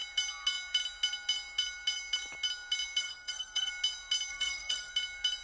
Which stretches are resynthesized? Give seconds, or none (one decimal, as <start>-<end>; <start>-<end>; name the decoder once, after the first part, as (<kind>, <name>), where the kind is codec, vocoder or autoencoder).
3.0-3.7 (codec, SNAC); 4.3-4.9